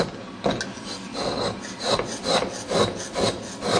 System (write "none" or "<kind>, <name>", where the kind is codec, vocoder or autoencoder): none